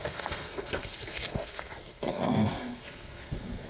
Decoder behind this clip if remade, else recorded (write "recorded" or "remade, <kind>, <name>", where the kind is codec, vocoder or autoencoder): remade, codec, SNAC